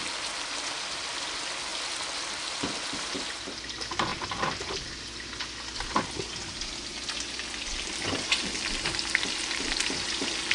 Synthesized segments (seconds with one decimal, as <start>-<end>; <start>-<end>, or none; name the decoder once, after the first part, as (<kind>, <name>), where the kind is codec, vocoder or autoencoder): none